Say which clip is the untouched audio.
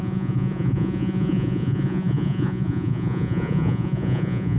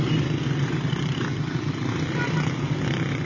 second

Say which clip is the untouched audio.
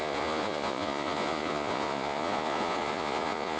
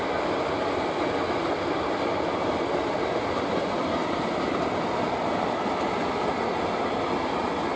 second